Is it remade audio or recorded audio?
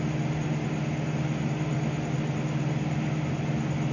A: recorded